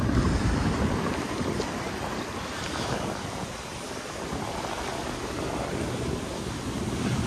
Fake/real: real